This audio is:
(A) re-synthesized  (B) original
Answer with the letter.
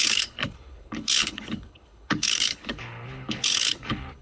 A